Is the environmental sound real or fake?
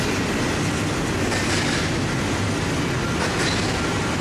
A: real